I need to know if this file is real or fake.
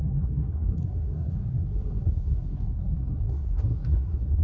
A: fake